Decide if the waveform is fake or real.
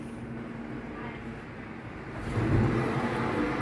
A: real